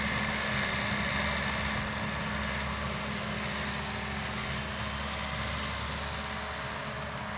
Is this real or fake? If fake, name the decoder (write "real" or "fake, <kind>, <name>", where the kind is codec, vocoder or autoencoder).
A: real